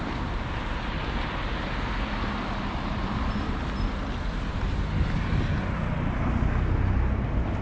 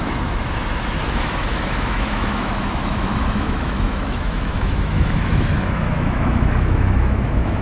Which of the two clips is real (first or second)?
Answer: first